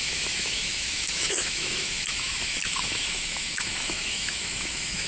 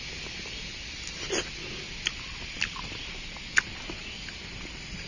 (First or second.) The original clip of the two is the second